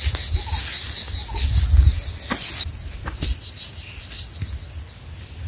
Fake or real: real